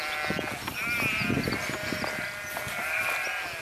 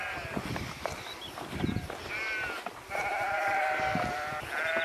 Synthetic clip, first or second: second